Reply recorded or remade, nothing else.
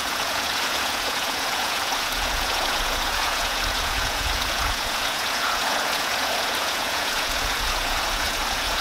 remade